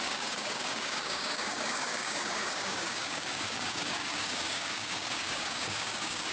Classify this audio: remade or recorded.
remade